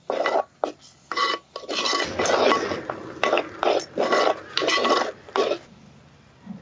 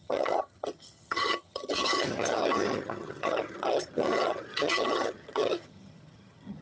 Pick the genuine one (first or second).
first